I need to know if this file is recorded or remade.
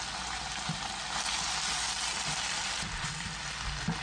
recorded